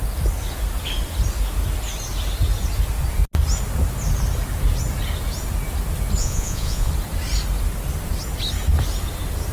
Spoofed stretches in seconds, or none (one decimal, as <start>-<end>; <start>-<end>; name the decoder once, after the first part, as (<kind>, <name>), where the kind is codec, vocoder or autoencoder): 6.2-6.9 (vocoder, Vocos)

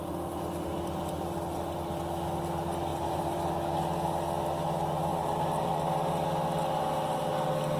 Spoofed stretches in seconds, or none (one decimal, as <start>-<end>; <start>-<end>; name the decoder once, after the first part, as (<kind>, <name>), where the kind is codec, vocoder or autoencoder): 2.9-3.4 (vocoder, BigVGAN v2); 5.1-5.7

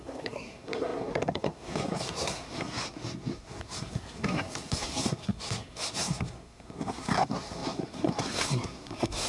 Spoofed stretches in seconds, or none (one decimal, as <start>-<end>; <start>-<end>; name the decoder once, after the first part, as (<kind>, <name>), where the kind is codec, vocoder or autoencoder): 0.0-9.3 (codec, SNAC)

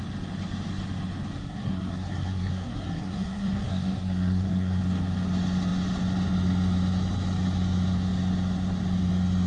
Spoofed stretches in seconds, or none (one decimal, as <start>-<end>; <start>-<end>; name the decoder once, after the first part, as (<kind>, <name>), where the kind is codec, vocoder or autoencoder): 1.4-4.8 (codec, SNAC)

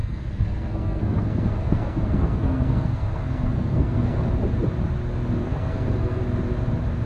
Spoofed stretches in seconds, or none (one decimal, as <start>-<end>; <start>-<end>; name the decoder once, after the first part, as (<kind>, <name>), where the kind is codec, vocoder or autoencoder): 0.0-4.3 (codec, SNAC); 5.4-6.2